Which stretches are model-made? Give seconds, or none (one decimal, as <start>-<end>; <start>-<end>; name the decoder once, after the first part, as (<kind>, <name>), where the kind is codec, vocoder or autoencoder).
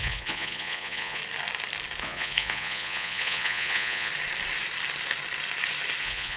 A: 0.0-1.2 (vocoder, Vocos); 2.0-4.1; 6.0-6.4